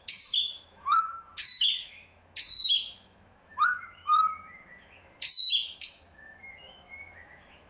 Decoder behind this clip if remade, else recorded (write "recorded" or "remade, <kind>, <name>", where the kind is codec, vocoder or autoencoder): remade, autoencoder, DAC-VAE